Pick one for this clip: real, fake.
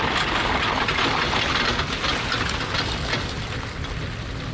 real